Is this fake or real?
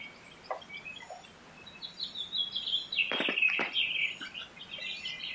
real